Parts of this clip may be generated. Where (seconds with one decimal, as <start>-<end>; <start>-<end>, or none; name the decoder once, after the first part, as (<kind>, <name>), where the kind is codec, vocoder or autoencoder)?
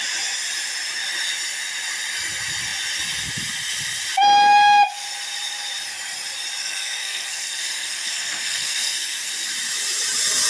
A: 6.6-9.3 (codec, SNAC)